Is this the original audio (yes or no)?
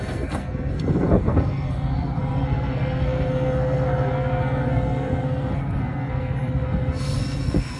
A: no